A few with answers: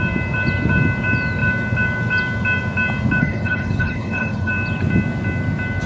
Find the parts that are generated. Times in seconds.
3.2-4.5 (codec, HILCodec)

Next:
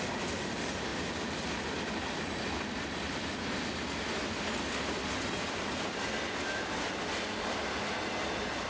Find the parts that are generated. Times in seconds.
none

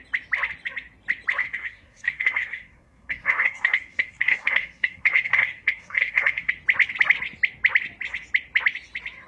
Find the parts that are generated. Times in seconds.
1.4-6.5 (codec, SNAC)

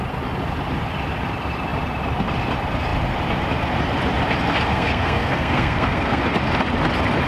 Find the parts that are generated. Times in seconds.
4.7-6.2 (codec, SNAC)